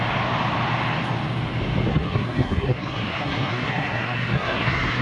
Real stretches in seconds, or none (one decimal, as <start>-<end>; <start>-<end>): 0.0-1.9

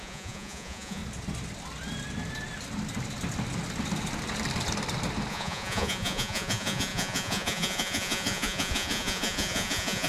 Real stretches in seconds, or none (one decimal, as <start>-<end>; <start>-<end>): 1.0-5.3

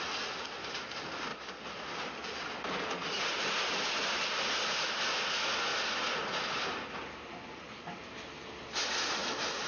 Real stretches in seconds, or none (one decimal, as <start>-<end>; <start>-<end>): 0.0-9.7

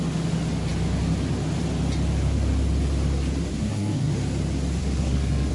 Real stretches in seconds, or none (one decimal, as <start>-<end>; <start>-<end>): 0.0-3.5; 4.1-4.8

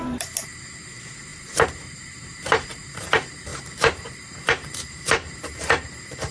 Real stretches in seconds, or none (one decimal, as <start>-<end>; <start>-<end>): none